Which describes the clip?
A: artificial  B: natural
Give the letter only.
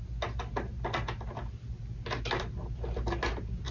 B